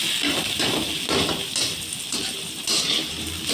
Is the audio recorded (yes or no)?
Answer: yes